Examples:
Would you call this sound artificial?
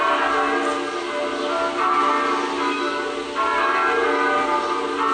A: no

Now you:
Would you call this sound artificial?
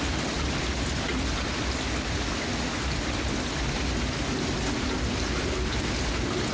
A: no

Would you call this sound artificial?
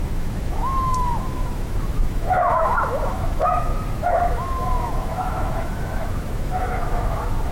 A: yes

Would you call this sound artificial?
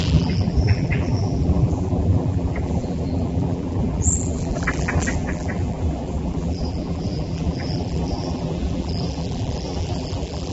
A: yes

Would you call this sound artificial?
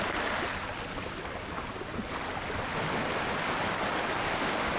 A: no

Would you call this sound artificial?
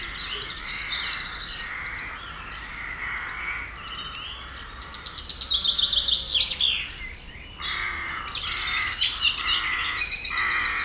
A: no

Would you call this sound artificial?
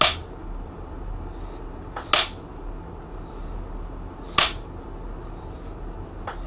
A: no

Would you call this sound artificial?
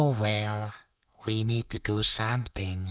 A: yes